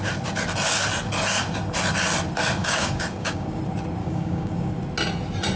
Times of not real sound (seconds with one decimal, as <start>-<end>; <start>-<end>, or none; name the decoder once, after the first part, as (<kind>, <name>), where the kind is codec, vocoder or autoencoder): 2.6-3.6 (codec, DAC); 4.0-4.7